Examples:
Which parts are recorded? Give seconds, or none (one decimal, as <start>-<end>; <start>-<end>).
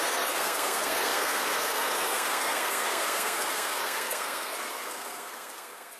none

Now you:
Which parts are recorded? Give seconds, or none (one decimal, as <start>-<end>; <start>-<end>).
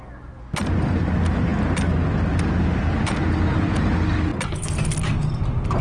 0.0-5.8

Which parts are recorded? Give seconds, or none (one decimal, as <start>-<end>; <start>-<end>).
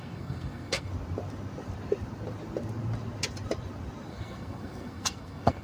0.9-4.1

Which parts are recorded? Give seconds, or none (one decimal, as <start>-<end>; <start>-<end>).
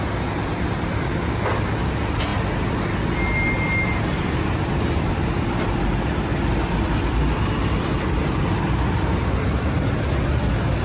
0.0-10.8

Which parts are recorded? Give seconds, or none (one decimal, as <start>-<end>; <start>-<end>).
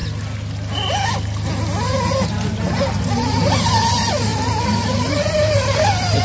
0.0-6.2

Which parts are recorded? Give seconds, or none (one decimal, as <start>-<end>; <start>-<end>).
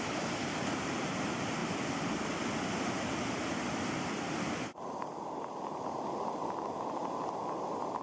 0.0-8.0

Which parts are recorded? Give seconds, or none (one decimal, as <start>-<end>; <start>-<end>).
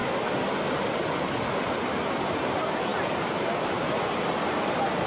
0.0-2.9; 4.3-5.1